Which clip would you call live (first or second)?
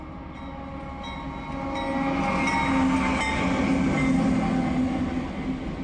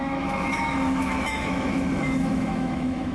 first